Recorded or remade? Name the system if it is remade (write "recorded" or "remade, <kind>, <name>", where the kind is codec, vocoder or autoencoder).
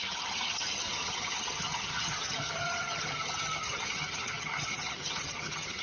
remade, vocoder, HiFi-GAN